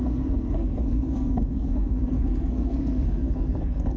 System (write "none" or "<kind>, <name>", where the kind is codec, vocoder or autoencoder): codec, SNAC